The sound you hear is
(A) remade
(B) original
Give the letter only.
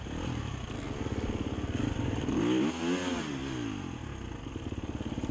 B